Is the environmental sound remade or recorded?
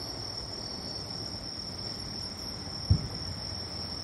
recorded